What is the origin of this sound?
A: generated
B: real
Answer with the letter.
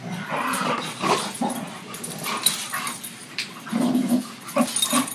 B